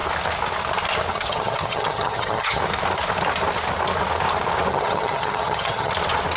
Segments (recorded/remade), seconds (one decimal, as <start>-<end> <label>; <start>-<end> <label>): 0.0-1.1 recorded; 1.1-2.6 remade; 2.6-4.7 recorded; 4.7-5.9 remade; 5.9-6.4 recorded